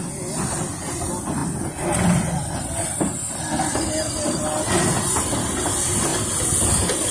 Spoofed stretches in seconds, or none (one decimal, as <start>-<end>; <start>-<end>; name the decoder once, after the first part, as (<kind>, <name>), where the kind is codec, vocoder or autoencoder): none